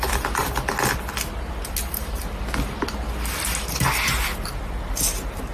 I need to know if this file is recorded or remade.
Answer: recorded